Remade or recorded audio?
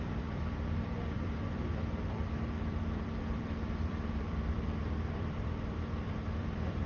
remade